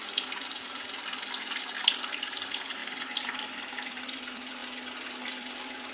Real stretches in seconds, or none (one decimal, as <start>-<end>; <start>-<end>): 4.6-5.2